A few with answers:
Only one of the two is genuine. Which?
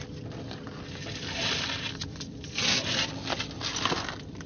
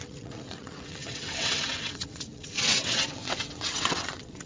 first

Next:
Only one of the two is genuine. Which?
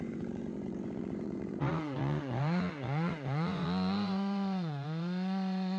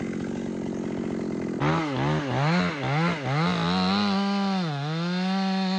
second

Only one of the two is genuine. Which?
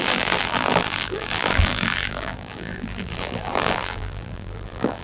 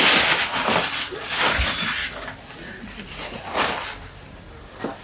second